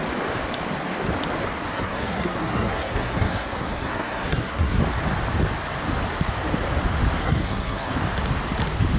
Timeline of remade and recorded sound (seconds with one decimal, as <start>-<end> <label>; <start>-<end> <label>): 0.0-1.7 recorded; 1.7-4.8 remade; 4.8-7.2 recorded; 7.2-7.9 remade; 7.9-9.0 recorded